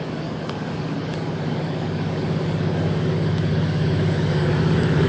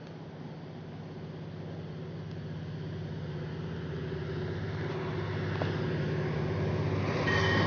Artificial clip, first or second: first